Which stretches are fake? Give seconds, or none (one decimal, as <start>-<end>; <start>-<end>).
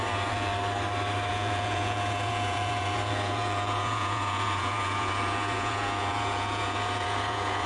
0.0-0.5; 1.3-7.7